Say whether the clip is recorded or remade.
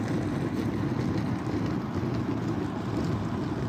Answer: recorded